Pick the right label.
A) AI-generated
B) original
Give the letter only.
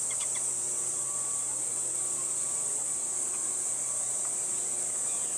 B